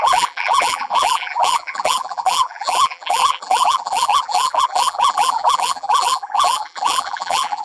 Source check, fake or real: fake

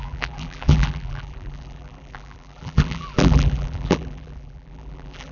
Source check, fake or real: fake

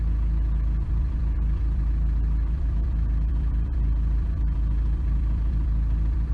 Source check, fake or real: fake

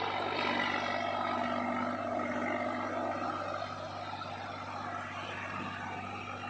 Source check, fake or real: real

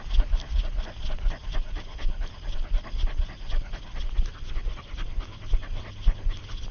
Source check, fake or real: real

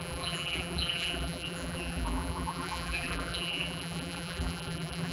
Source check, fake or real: fake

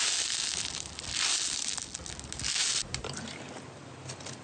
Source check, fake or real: real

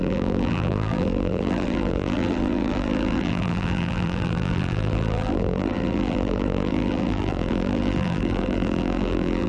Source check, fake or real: fake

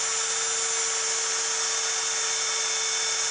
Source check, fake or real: real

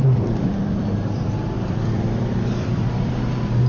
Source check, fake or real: fake